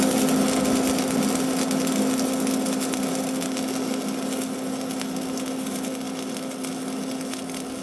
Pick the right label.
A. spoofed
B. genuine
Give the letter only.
B